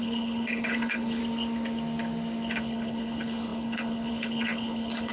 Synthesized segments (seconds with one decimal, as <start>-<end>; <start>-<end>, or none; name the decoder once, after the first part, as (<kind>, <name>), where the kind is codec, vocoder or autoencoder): 0.0-1.2 (codec, HILCodec); 2.6-5.1